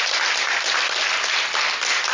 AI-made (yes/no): no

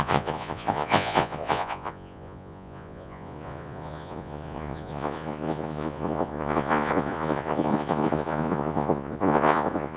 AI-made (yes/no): yes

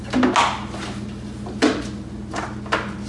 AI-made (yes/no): no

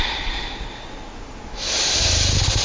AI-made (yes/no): no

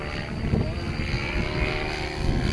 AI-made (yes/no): no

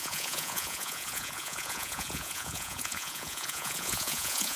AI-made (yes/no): yes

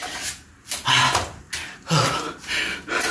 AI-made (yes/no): no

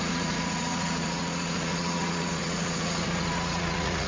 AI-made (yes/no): yes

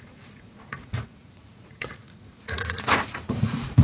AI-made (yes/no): yes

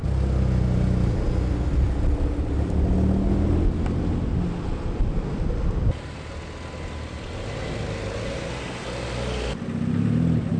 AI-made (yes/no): no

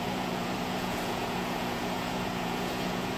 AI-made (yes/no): yes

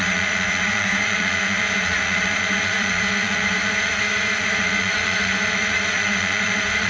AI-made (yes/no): yes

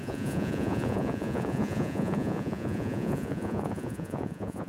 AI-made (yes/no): yes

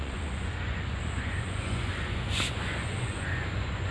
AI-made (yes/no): yes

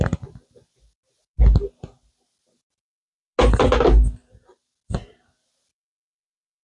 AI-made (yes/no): no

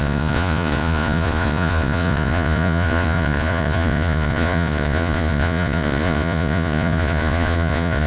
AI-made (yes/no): yes